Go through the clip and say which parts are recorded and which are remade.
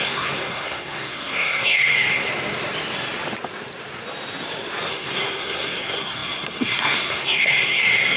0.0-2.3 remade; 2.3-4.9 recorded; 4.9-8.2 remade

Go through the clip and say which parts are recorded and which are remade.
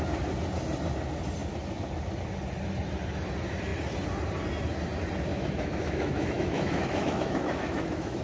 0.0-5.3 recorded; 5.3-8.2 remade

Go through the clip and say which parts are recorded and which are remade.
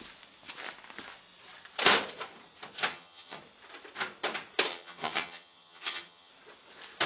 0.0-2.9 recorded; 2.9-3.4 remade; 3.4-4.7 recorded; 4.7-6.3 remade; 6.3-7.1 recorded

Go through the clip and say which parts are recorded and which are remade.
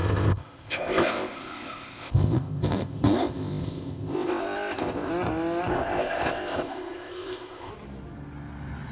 0.0-5.1 remade; 5.1-5.7 recorded; 5.7-7.7 remade; 7.7-8.9 recorded